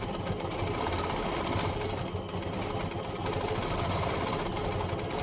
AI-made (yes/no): no